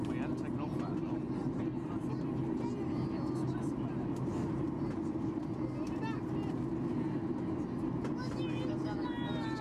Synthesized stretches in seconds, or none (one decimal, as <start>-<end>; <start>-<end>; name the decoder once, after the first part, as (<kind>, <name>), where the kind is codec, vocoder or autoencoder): none